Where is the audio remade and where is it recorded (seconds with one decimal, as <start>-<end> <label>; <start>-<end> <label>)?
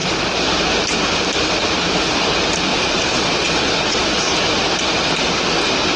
0.0-2.7 recorded; 2.7-4.2 remade; 4.2-6.0 recorded